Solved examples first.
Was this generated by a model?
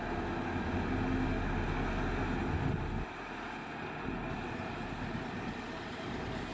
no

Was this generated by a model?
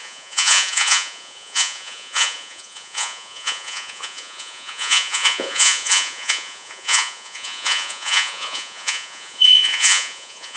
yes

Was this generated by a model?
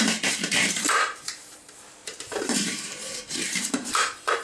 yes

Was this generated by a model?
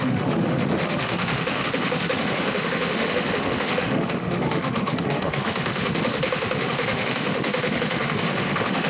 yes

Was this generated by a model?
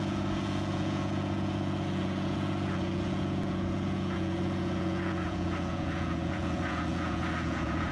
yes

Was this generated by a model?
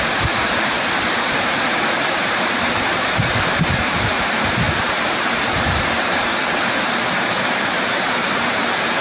yes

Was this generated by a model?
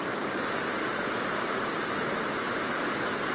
no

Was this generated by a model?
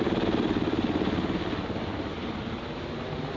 no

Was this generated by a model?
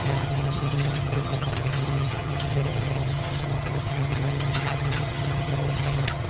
yes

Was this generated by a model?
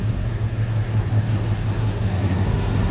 yes